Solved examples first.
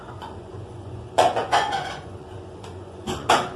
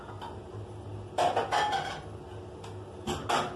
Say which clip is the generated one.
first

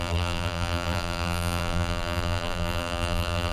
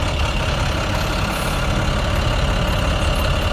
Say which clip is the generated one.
first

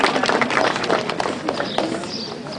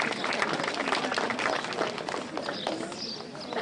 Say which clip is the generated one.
first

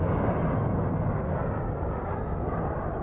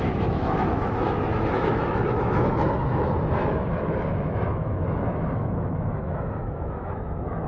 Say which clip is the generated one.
second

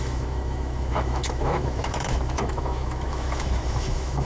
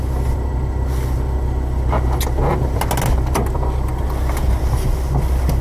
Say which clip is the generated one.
first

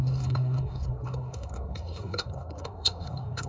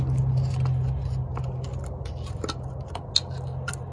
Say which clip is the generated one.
first